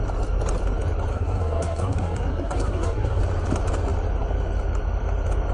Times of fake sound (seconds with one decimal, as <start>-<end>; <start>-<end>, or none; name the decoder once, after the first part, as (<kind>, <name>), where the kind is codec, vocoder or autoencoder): 1.1-3.2 (codec, SNAC)